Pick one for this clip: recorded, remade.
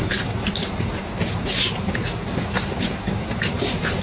recorded